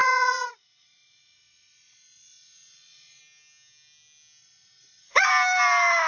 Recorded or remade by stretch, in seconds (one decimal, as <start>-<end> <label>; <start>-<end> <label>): 0.0-3.2 remade; 3.2-4.4 recorded; 4.4-5.3 remade; 5.3-6.1 recorded